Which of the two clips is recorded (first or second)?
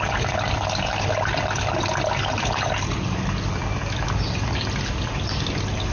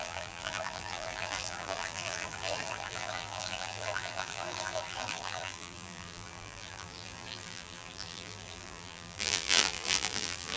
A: first